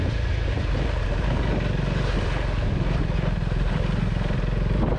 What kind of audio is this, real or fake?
real